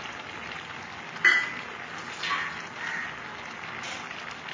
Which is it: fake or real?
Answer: real